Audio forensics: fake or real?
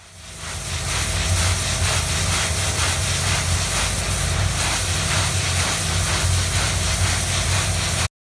real